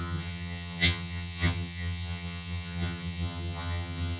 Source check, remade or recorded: remade